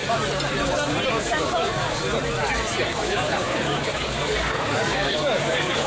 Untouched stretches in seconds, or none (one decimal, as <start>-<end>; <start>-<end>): 0.0-1.1; 2.0-2.9